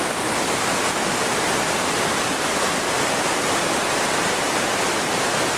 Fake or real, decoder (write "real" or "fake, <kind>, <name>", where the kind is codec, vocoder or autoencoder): real